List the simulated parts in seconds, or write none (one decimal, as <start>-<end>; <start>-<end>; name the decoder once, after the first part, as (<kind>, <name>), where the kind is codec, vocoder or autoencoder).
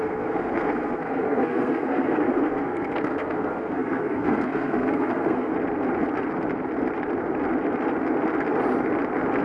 0.0-5.5 (codec, SNAC)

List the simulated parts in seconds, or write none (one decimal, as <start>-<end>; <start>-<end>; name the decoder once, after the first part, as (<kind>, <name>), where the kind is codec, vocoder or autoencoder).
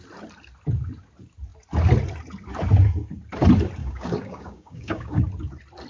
3.8-5.2 (codec, DAC)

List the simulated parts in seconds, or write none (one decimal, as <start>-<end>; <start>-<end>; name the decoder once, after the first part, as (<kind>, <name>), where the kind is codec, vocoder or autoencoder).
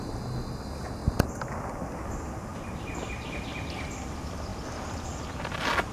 none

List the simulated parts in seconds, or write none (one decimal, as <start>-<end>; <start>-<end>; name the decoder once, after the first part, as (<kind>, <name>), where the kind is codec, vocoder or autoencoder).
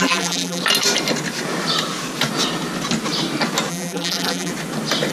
0.0-0.6 (vocoder, BigVGAN v2); 3.7-4.5